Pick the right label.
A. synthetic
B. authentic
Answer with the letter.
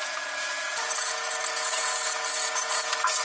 A